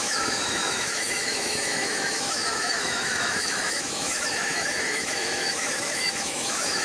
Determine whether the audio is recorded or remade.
remade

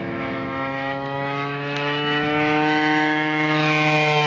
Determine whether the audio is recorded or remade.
remade